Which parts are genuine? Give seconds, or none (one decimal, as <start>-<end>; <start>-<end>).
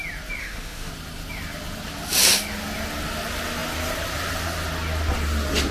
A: 0.0-0.4; 0.9-5.7